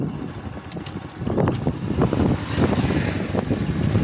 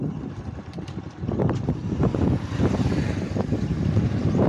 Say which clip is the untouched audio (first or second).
first